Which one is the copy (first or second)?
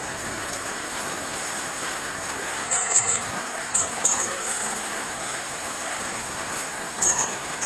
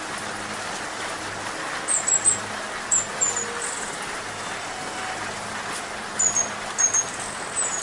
first